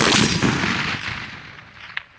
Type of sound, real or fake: real